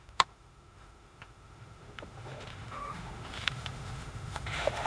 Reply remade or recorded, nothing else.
remade